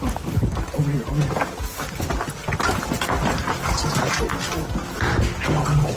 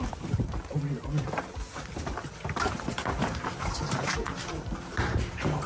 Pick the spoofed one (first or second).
second